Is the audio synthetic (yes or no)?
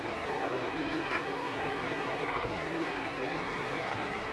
yes